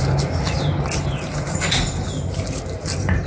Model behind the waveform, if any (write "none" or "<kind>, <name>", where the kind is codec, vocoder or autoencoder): none